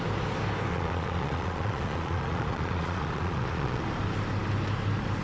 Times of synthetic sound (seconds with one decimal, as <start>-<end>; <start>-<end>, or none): 0.7-3.8